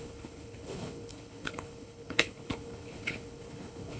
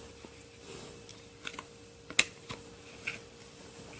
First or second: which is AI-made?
first